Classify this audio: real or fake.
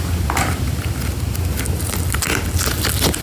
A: real